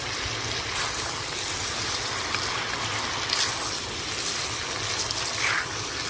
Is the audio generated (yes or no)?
no